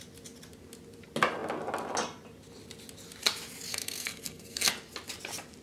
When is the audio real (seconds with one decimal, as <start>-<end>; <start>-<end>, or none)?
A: 0.0-3.7; 4.7-5.6